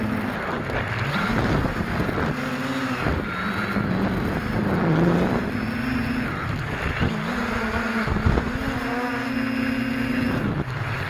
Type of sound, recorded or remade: recorded